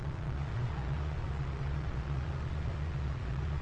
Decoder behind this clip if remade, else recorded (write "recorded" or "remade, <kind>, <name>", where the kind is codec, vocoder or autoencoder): remade, vocoder, Vocos